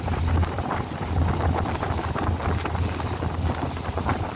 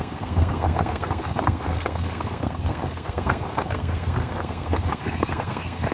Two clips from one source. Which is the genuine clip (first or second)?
first